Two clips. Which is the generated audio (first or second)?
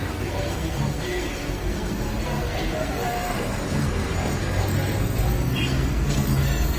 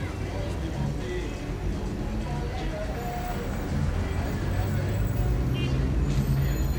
first